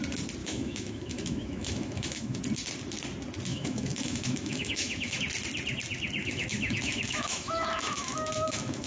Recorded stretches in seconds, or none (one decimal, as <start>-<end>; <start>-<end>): 0.0-0.4; 2.4-3.5; 5.2-6.2